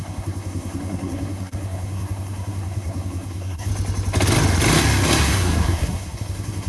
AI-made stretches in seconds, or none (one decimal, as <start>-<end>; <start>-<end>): 0.0-3.7; 5.2-6.7